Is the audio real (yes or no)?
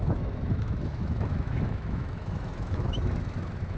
no